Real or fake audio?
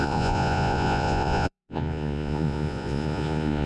fake